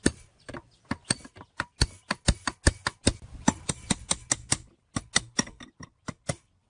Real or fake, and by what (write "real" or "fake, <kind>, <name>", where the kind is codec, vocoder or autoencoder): real